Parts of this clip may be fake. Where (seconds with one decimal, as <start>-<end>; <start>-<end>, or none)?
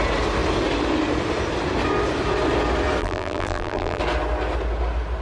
3.0-4.0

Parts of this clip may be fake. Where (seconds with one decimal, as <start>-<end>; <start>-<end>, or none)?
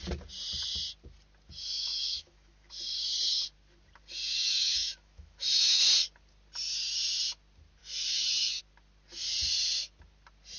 1.9-2.7; 4.2-5.8; 7.8-8.6